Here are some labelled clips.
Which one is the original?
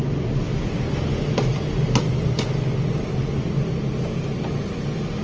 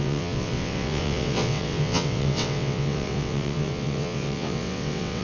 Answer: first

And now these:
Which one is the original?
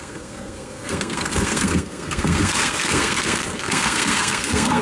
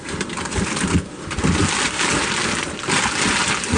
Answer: second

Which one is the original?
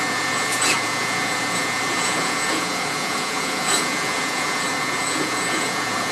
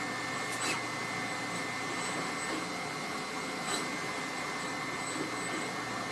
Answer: second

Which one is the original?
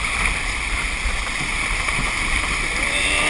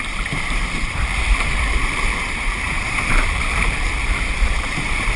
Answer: first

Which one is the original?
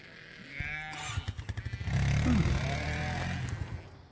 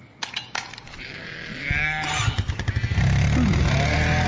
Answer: first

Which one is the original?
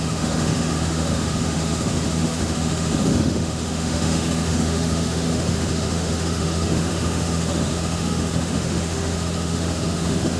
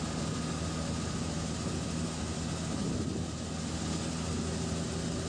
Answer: second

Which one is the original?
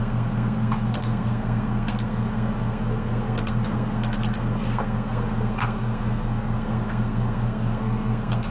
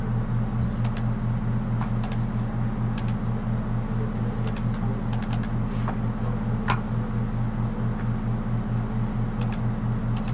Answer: second